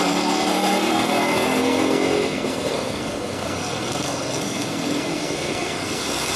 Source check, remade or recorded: remade